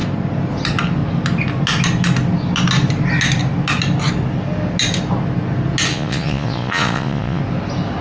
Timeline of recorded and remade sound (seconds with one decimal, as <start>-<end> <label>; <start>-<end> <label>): 0.0-5.9 recorded; 5.9-7.4 remade; 7.4-8.0 recorded